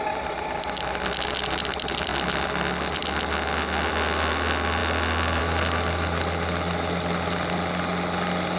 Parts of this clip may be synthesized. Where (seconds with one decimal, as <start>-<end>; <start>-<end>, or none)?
none

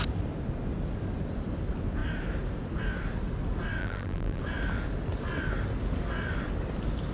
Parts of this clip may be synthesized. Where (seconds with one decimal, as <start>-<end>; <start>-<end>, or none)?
3.8-4.4

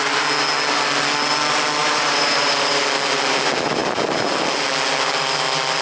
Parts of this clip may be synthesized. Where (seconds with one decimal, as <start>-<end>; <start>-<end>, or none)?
1.8-2.8

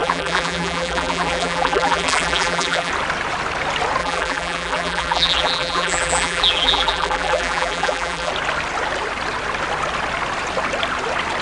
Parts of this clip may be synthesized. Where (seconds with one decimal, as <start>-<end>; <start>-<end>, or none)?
0.0-2.9; 4.0-8.3